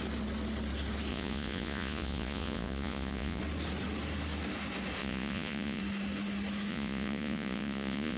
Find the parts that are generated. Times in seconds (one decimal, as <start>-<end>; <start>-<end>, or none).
1.1-3.4; 5.0-5.8; 6.7-8.2